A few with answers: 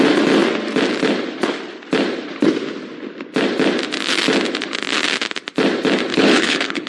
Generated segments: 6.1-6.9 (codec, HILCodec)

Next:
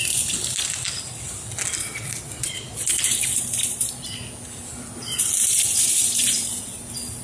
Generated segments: 1.8-3.0 (vocoder, Vocos)

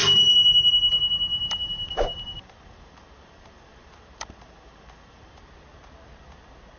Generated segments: 0.0-0.7 (vocoder, BigVGAN v2); 1.3-5.4